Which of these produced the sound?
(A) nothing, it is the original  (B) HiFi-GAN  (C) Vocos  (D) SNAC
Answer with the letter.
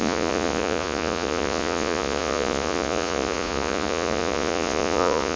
C